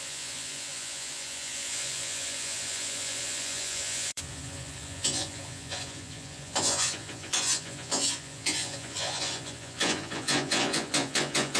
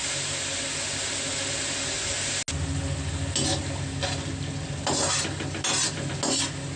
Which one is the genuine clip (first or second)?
second